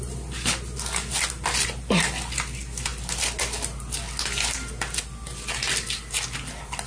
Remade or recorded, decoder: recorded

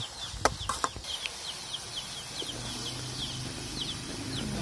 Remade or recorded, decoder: recorded